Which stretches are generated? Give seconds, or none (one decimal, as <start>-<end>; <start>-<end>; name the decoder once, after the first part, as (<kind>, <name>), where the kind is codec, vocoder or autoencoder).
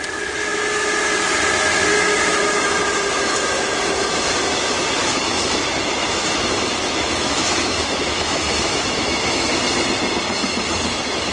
1.9-2.8 (autoencoder, DAC-VAE); 5.0-9.5